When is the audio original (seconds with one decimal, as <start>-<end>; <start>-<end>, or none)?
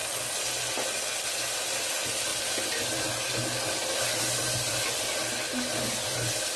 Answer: 0.0-6.6